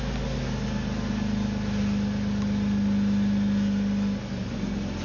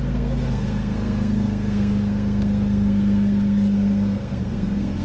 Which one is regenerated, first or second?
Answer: second